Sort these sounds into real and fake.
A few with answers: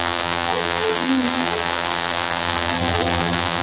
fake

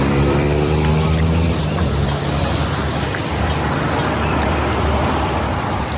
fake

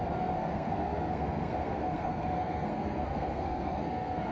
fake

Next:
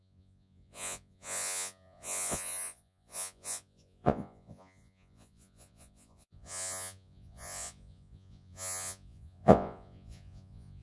fake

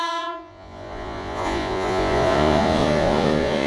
fake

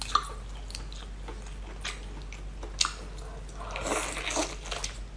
real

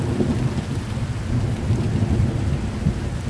real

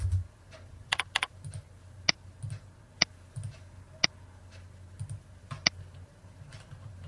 real